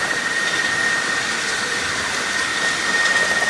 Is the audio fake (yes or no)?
no